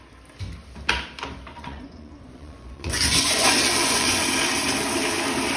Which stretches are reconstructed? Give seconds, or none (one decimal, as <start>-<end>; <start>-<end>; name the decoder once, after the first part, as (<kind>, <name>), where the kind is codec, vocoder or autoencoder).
1.5-4.3 (vocoder, Vocos)